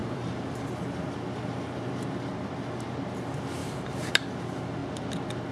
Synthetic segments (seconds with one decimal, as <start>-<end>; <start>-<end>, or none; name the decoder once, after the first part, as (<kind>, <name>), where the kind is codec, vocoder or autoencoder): 0.0-0.7 (vocoder, BigVGAN v2); 3.6-4.1